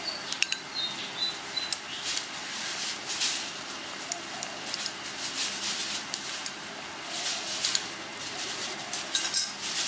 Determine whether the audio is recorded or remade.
recorded